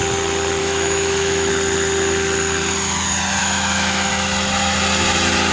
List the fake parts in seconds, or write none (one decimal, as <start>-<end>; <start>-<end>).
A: 0.6-1.5; 3.4-4.1